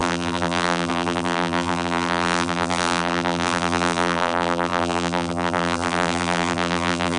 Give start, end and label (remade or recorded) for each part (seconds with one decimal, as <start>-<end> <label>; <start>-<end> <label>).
0.0-7.2 remade